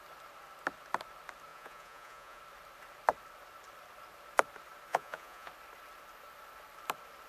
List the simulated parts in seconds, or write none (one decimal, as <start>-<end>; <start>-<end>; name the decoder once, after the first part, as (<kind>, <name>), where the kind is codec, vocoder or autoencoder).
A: 1.5-2.4 (vocoder, Vocos); 4.9-5.5

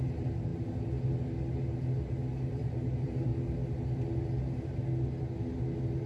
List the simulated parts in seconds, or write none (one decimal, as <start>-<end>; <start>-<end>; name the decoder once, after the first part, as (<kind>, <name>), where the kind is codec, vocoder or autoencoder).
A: 0.0-0.5 (vocoder, BigVGAN v2); 2.5-3.3

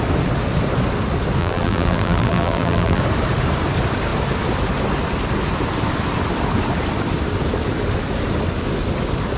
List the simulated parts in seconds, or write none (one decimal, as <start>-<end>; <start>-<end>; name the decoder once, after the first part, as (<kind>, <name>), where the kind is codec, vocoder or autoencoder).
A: 1.4-3.0 (vocoder, BigVGAN v2)

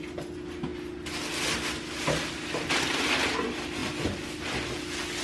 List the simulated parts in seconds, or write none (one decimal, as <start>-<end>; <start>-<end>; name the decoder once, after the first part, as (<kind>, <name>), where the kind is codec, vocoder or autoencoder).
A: 0.7-3.4 (vocoder, BigVGAN v2); 3.8-4.4

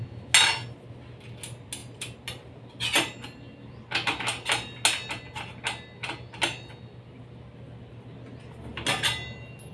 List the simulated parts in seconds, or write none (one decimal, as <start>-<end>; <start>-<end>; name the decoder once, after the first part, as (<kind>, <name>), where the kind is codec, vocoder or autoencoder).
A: none

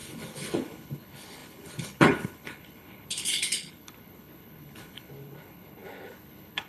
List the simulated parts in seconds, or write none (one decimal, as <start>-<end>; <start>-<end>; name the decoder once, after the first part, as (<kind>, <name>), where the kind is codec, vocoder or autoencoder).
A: 0.0-6.7 (codec, HILCodec)

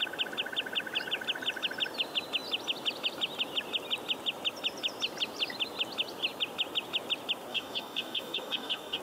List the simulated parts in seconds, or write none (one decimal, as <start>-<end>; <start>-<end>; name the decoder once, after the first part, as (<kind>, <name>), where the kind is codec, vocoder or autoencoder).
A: 7.5-9.0 (codec, DAC)